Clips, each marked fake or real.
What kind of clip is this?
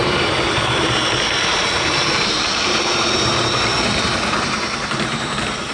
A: fake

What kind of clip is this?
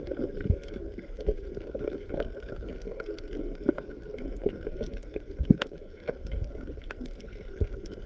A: fake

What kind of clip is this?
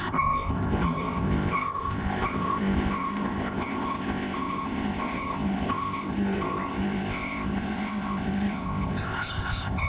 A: fake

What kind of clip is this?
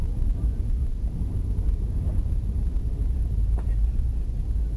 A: fake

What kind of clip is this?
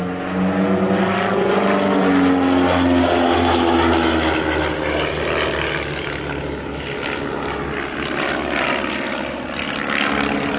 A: real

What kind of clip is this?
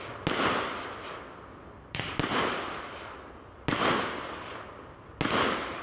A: real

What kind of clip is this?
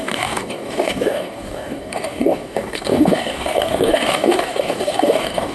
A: fake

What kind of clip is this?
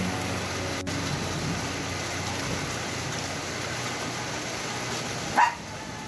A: real